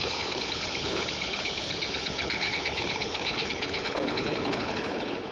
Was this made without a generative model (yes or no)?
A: no